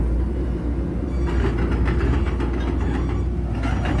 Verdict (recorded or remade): recorded